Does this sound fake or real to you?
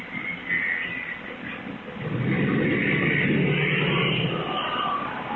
real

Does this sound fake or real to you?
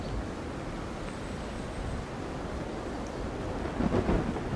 real